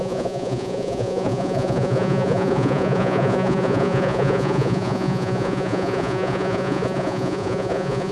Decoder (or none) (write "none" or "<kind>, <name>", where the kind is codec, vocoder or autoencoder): vocoder, Vocos